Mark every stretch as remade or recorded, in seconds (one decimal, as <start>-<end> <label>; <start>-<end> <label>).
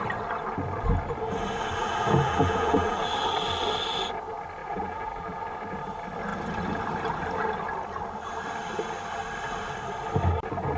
0.0-1.8 recorded; 1.8-3.1 remade; 3.1-4.6 recorded; 4.6-5.4 remade; 5.4-10.8 recorded